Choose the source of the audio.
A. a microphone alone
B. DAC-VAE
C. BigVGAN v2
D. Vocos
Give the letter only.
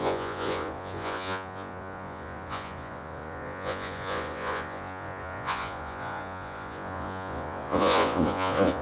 D